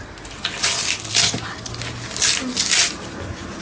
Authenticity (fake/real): real